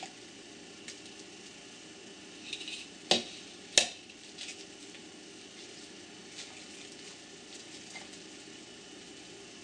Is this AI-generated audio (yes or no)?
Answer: no